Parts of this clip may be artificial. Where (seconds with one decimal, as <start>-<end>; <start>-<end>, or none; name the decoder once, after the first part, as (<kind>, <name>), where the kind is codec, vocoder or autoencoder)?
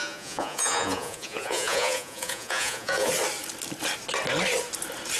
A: 0.0-3.1 (vocoder, Vocos)